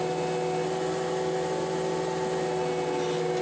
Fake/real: real